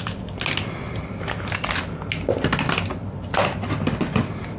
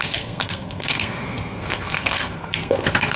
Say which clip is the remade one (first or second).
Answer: second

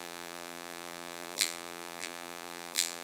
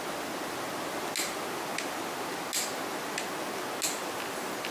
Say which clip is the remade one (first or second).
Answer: first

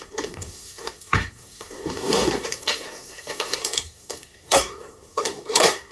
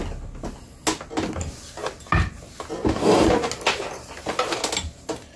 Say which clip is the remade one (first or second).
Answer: first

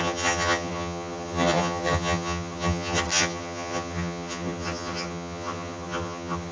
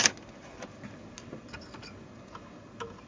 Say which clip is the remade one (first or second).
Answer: first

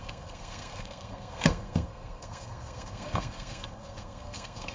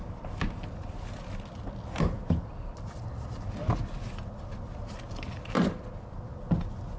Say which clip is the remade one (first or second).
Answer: first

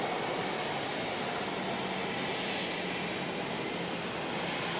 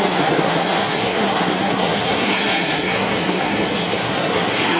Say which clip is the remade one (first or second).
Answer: second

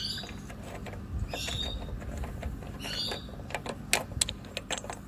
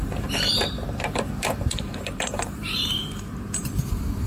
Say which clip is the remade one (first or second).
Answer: second